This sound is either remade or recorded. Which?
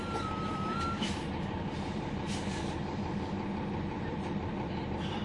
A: remade